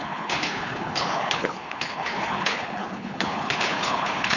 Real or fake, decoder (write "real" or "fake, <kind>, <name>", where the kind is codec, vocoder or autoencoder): fake, codec, HILCodec